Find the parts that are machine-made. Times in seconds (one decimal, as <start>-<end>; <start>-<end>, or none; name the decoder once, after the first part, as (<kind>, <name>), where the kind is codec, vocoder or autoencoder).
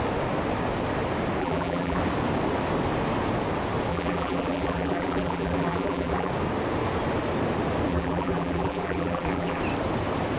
1.4-2.0 (vocoder, BigVGAN v2); 3.9-6.3; 7.9-9.6